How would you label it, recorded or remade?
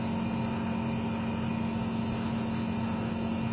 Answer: recorded